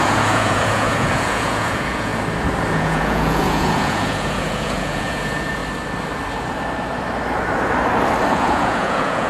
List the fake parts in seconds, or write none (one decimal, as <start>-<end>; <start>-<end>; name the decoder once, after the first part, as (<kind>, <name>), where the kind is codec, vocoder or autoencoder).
0.0-2.1 (vocoder, Vocos); 2.7-5.6; 8.3-9.3